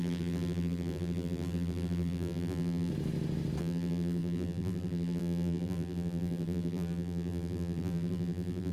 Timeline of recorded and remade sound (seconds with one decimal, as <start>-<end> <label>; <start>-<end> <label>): 0.0-2.9 remade; 2.9-3.6 recorded; 3.6-8.7 remade